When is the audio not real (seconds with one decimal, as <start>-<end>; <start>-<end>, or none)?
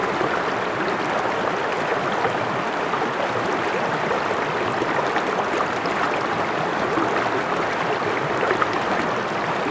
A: none